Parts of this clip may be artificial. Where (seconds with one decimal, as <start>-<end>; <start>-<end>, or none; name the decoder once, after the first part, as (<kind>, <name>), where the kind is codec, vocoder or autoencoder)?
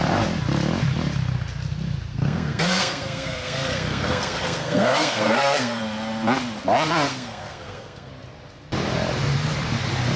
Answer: 2.1-5.8 (codec, SNAC); 7.1-8.1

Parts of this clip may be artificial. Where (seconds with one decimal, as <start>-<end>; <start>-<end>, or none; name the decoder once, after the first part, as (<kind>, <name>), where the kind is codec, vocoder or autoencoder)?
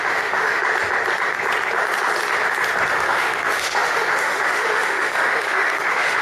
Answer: 0.0-0.6 (autoencoder, DAC-VAE); 2.9-6.2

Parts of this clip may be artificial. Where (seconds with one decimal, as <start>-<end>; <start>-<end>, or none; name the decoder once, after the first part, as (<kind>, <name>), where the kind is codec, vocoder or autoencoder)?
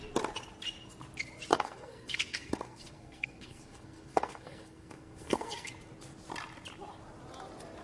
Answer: 1.5-5.7 (codec, SNAC)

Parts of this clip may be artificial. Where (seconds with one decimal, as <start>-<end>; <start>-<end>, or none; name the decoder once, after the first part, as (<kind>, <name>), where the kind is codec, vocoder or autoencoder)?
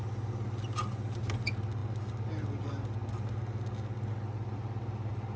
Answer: none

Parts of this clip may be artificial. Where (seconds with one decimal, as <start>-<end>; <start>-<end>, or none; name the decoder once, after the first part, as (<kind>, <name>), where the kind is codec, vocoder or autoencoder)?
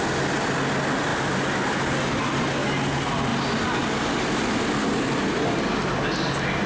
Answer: none